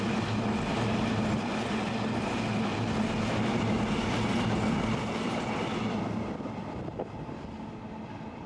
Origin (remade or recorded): recorded